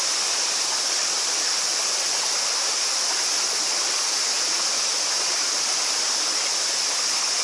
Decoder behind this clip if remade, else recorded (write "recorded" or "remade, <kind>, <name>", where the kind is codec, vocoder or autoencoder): recorded